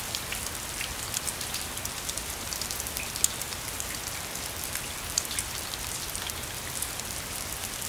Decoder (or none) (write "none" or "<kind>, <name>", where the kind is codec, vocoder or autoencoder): none